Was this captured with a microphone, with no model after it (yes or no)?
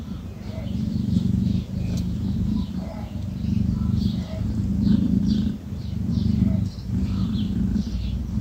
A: no